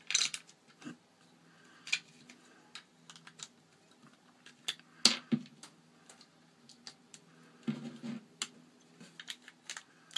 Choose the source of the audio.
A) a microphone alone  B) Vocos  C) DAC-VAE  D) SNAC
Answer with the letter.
A